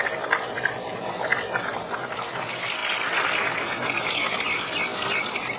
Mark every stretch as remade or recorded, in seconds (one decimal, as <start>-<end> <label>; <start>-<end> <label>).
0.0-0.9 remade; 0.9-2.0 recorded; 2.0-2.8 remade; 2.8-4.0 recorded; 4.0-5.6 remade